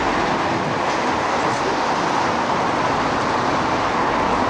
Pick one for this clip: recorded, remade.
recorded